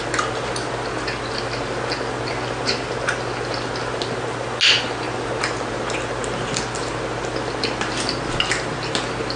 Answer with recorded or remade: recorded